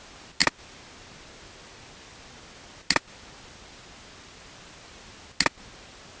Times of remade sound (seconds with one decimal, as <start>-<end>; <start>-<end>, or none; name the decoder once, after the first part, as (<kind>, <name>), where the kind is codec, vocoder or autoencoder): none